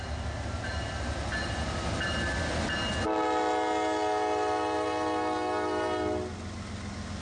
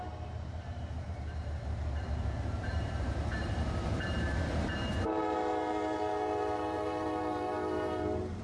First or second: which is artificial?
second